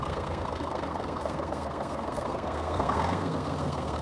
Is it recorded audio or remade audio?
remade